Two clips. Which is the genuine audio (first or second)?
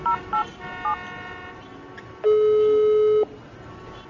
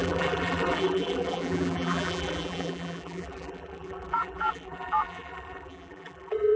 first